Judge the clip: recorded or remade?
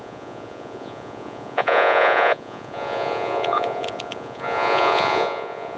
remade